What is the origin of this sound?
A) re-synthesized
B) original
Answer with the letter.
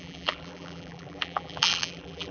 A